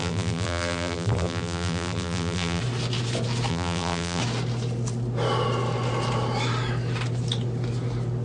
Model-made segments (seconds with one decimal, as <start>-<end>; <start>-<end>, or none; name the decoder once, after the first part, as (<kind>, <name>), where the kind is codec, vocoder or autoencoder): 0.0-2.6 (vocoder, BigVGAN v2); 3.5-4.2